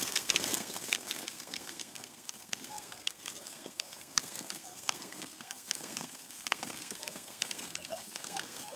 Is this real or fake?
fake